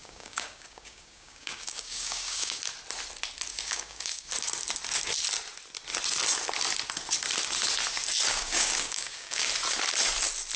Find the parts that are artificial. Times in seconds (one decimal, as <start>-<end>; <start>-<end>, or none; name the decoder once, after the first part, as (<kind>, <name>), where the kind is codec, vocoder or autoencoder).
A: 0.0-2.6 (codec, DAC); 3.5-4.3; 8.3-9.5